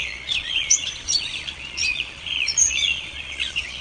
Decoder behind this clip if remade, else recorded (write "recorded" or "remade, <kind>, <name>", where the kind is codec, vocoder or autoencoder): remade, vocoder, Vocos